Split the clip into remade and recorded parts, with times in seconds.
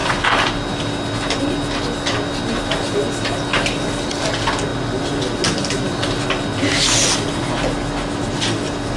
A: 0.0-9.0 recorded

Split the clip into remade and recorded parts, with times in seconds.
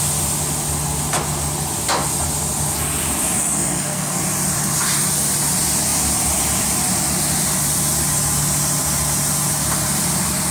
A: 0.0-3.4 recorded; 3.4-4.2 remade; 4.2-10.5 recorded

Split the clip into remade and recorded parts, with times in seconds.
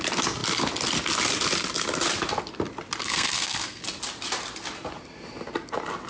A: 0.0-3.0 recorded; 3.0-3.8 remade; 3.8-6.1 recorded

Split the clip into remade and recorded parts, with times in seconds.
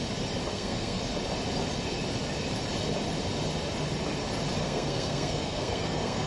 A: 0.0-0.5 recorded; 0.5-1.0 remade; 1.0-4.6 recorded; 4.6-6.3 remade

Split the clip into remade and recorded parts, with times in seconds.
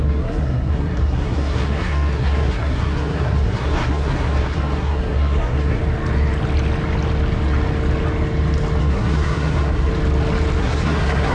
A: 0.0-5.8 remade; 5.8-8.8 recorded; 8.8-9.9 remade; 9.9-10.6 recorded; 10.6-11.3 remade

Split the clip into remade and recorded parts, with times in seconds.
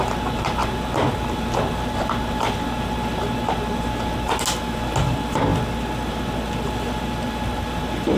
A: 0.0-8.2 recorded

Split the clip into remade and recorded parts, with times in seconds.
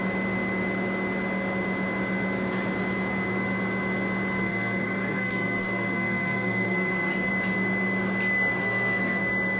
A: 0.0-4.4 recorded; 4.4-7.3 remade; 7.3-8.6 recorded; 8.6-9.2 remade; 9.2-9.6 recorded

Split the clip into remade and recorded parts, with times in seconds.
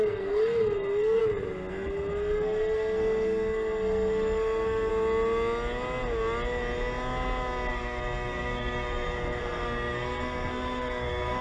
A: 0.0-1.2 remade; 1.2-1.7 recorded; 1.7-4.9 remade; 4.9-7.7 recorded; 7.7-11.4 remade